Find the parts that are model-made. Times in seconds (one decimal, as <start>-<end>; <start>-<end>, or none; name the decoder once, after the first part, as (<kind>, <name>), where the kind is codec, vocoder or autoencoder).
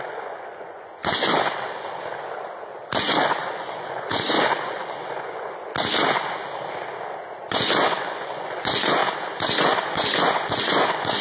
0.0-1.3 (vocoder, Vocos); 3.0-5.7; 7.5-9.0; 9.6-11.2